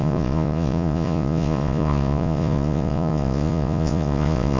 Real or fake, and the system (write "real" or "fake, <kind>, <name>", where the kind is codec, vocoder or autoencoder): fake, vocoder, Vocos